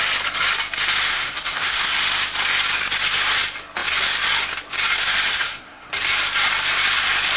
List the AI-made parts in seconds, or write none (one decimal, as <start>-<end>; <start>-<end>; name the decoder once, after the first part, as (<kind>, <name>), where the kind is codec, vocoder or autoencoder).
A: 1.1-2.0 (codec, SNAC); 5.3-5.9